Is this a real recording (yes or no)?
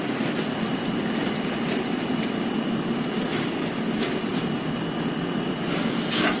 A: yes